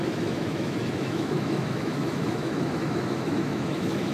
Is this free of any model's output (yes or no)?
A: no